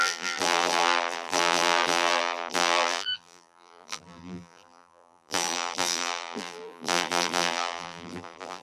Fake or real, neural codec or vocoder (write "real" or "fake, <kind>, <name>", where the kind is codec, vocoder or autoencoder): fake, vocoder, BigVGAN v2